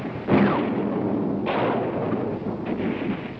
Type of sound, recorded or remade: recorded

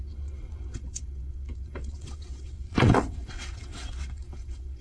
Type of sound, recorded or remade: remade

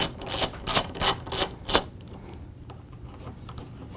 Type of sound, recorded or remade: recorded